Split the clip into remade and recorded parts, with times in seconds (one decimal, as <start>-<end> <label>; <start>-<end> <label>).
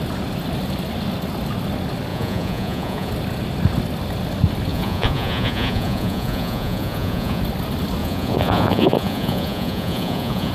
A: 0.0-2.1 recorded; 2.1-3.1 remade; 3.1-4.7 recorded; 4.7-7.4 remade; 7.4-8.0 recorded; 8.0-10.5 remade